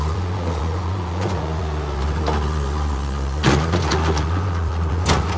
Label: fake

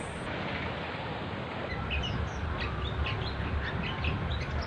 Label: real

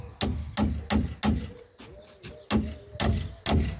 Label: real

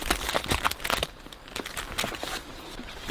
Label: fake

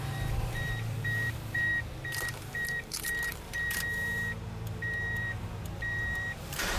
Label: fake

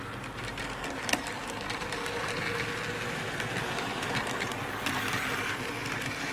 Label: real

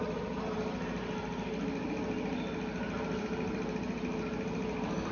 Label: real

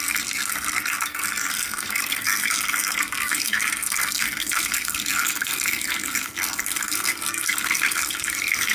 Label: fake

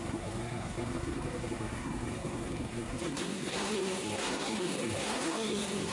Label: fake